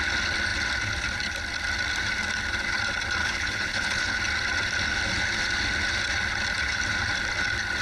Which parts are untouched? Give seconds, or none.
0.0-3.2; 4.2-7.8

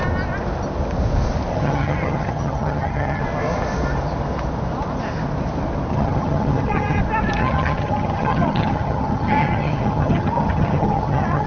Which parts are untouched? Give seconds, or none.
0.0-1.5; 3.2-5.9; 7.0-7.4

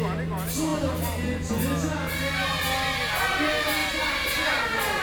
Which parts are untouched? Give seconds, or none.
0.0-5.0

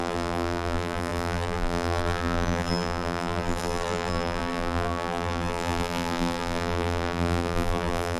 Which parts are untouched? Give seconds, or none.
none

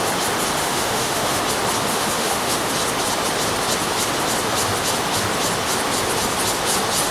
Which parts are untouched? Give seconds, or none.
0.0-0.6; 1.4-1.9; 2.7-7.1